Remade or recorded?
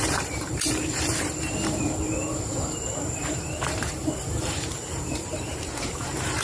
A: remade